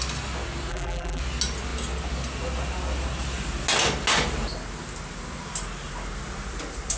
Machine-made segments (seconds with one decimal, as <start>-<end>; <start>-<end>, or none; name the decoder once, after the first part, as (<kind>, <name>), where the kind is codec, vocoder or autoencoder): 0.7-1.2 (vocoder, BigVGAN v2)